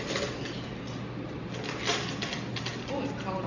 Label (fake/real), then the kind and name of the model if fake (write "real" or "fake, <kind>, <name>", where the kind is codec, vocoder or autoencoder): real